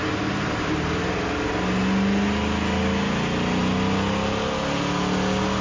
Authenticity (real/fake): real